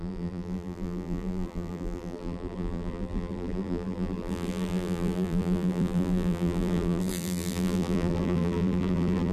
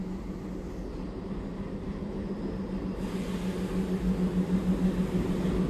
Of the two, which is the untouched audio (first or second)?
second